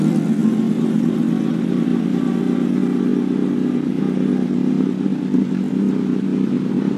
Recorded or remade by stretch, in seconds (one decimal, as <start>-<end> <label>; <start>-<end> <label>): 0.0-7.0 recorded